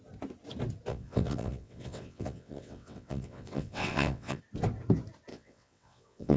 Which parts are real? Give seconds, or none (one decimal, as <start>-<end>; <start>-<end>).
0.0-0.9; 4.4-5.3